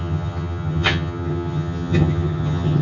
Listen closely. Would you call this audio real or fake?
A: fake